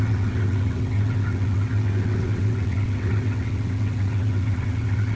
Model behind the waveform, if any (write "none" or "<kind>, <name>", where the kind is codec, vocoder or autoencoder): vocoder, WaveNeXt